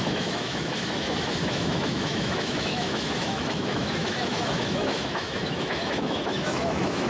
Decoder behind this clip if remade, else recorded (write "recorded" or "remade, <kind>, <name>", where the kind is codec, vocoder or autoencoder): remade, autoencoder, DAC-VAE